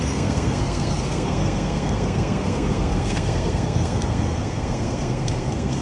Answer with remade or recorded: remade